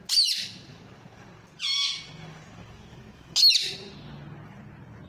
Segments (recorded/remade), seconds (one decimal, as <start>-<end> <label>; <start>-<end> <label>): 0.0-2.9 recorded; 2.9-3.5 remade; 3.5-5.1 recorded